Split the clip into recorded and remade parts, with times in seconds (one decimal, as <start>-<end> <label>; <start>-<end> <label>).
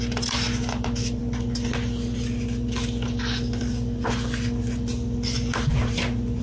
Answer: 0.0-6.4 recorded